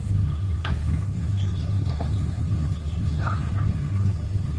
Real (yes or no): no